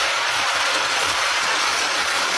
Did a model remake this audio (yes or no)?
yes